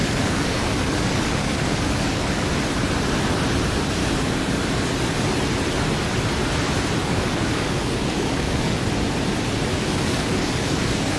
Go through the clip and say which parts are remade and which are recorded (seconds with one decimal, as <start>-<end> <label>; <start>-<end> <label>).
0.0-2.5 remade; 2.5-4.0 recorded; 4.0-4.7 remade; 4.7-7.0 recorded; 7.0-8.8 remade; 8.8-9.7 recorded; 9.7-11.2 remade